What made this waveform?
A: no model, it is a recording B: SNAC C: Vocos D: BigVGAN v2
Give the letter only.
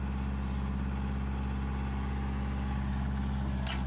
A